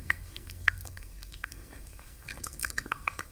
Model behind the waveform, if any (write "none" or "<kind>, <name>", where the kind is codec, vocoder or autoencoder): codec, SNAC